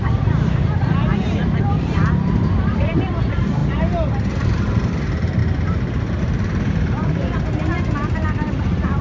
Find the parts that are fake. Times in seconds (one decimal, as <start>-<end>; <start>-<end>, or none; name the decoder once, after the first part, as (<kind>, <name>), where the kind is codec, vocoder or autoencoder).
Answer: 0.0-1.1 (vocoder, BigVGAN v2); 1.6-5.4; 6.2-7.5; 8.5-9.0